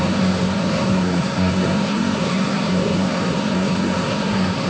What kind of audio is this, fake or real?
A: fake